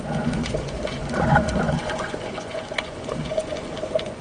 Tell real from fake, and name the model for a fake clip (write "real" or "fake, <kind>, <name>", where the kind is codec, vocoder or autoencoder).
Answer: fake, vocoder, Vocos